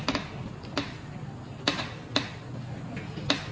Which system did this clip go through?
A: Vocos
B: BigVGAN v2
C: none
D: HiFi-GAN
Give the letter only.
C